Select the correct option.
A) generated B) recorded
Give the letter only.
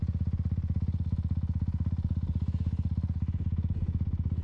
B